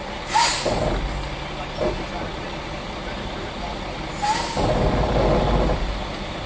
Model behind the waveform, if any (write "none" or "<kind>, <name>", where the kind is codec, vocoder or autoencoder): none